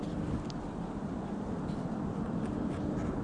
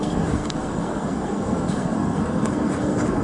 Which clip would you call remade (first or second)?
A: second